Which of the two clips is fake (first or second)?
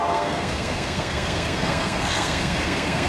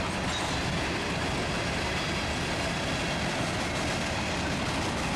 first